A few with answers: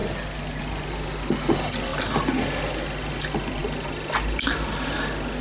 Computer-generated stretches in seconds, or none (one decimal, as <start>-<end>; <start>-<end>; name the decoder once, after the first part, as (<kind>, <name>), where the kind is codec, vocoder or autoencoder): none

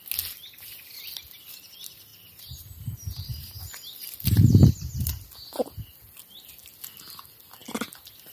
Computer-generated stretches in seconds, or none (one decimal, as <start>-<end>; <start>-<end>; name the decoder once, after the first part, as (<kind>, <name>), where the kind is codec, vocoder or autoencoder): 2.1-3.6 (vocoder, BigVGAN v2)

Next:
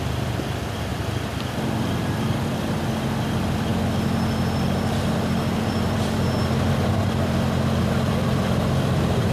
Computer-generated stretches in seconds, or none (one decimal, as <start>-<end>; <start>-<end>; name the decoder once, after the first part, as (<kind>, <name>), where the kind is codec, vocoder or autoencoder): 0.0-0.9 (vocoder, BigVGAN v2); 2.0-3.7; 7.8-9.3

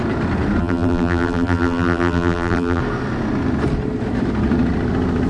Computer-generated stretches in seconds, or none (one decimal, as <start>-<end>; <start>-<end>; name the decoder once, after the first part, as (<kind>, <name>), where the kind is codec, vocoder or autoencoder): 0.6-2.8 (vocoder, BigVGAN v2)

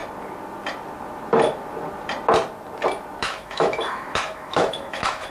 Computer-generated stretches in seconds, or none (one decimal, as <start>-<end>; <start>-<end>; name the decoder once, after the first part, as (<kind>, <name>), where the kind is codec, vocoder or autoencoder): 3.2-5.3 (autoencoder, DAC-VAE)

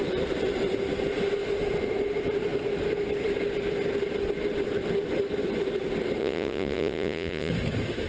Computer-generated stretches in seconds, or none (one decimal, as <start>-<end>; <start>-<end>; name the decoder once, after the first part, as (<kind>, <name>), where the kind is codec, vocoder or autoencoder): 6.2-7.5 (vocoder, Vocos)

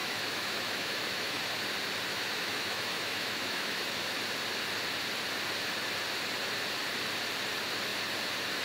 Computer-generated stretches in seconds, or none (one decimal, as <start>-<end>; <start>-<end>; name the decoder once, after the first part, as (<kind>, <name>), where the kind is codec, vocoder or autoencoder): 0.0-1.4 (autoencoder, DAC-VAE); 2.1-4.2